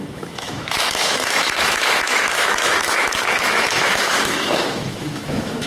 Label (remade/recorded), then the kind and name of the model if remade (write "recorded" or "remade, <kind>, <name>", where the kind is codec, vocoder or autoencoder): remade, autoencoder, DAC-VAE